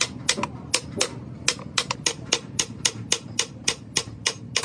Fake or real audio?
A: real